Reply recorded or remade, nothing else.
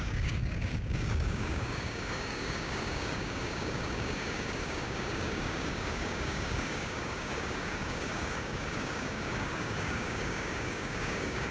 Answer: remade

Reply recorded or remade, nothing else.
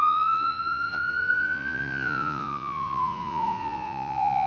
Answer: remade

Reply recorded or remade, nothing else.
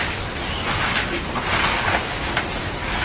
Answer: recorded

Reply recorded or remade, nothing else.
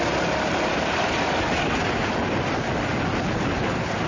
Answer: recorded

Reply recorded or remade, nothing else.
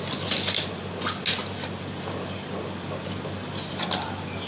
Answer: recorded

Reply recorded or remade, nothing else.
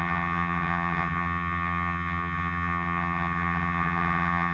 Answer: remade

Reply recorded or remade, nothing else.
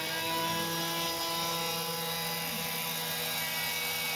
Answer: recorded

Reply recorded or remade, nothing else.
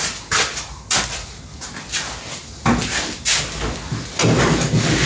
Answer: recorded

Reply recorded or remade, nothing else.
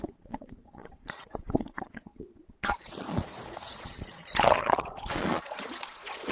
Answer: remade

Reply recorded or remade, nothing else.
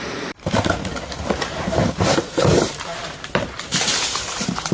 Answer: remade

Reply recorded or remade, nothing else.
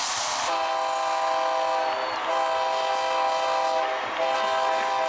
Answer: recorded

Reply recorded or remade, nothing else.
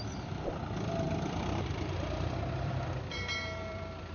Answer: remade